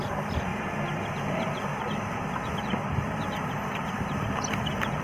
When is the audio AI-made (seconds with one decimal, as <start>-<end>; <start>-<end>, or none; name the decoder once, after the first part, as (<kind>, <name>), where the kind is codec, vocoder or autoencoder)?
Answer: 0.0-0.5 (vocoder, BigVGAN v2); 1.1-1.7